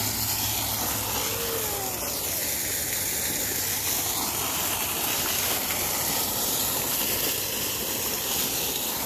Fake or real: real